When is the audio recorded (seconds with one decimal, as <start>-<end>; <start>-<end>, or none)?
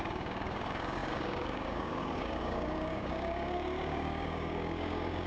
none